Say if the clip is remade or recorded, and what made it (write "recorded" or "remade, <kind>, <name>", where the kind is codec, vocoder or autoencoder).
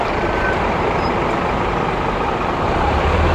remade, vocoder, BigVGAN v2